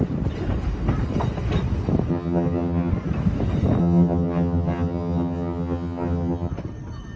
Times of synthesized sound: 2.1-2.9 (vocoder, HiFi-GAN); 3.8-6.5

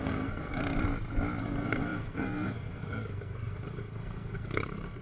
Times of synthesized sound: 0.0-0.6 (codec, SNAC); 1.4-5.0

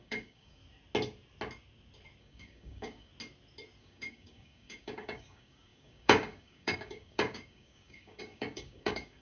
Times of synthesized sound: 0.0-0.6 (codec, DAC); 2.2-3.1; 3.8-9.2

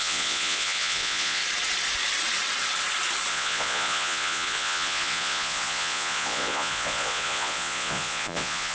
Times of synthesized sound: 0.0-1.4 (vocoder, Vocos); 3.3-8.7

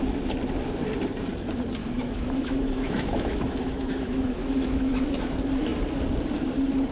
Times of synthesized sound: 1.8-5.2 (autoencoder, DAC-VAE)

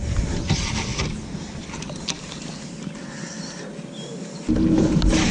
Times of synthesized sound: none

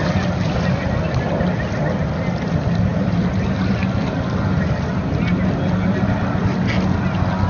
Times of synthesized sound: none